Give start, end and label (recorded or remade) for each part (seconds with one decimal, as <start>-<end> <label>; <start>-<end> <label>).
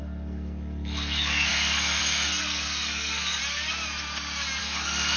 0.0-3.4 remade; 3.4-4.6 recorded; 4.6-5.2 remade